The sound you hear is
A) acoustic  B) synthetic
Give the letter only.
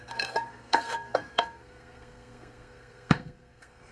B